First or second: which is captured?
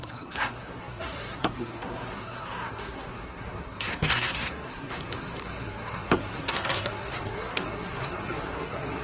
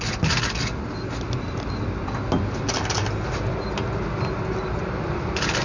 second